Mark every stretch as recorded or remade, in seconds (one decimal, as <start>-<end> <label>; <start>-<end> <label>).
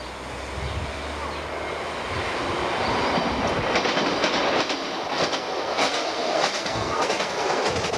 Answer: 0.0-5.1 recorded; 5.1-7.6 remade; 7.6-8.0 recorded